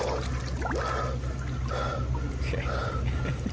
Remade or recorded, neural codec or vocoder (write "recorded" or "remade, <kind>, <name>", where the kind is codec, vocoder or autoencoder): recorded